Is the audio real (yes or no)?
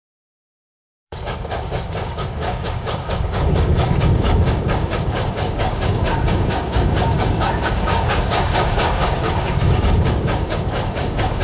no